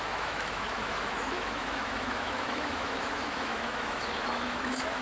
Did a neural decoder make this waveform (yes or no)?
yes